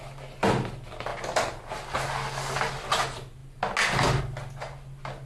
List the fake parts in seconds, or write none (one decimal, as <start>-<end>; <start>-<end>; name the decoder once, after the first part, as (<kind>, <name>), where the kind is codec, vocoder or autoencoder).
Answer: none